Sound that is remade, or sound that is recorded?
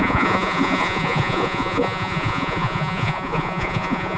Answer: remade